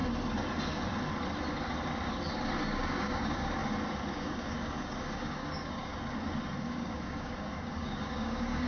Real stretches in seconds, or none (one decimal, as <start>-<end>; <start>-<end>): 0.0-2.6; 3.6-4.1; 5.9-6.6